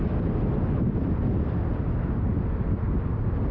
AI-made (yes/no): no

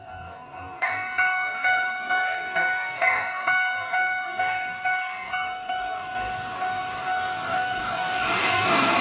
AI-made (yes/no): yes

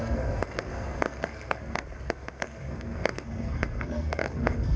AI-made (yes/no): yes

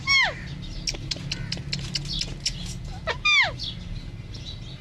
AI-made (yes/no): no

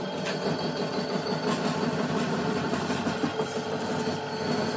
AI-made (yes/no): no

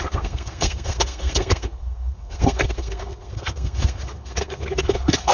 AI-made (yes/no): yes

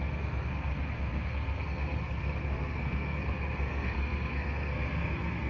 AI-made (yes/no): yes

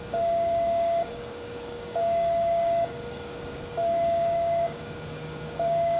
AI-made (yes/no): yes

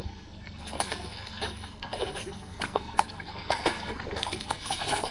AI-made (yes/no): yes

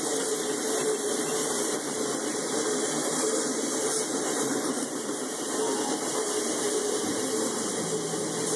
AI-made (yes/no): no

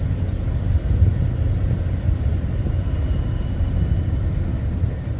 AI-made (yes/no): no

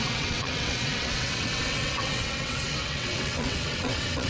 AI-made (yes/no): yes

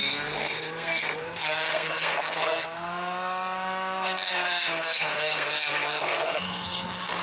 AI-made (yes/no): yes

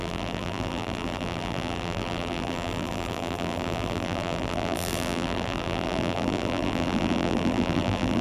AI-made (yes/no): yes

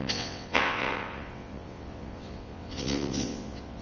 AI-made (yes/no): yes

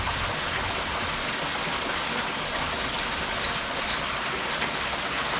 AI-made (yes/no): no